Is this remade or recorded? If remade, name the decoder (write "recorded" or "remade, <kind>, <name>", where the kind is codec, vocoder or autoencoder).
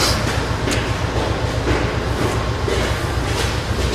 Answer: recorded